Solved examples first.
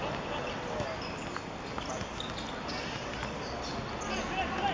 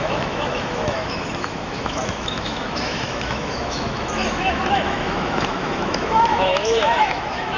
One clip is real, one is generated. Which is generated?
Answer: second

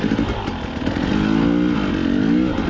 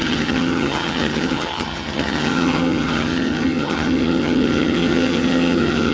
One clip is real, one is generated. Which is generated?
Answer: second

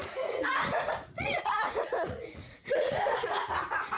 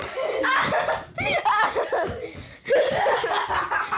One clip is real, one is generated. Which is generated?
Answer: first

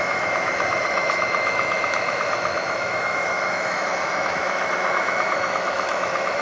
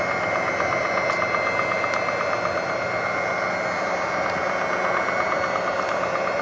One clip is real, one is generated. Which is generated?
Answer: first